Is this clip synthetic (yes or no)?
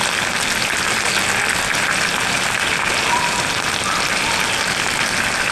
no